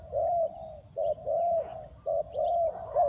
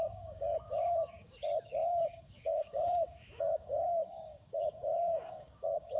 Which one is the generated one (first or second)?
second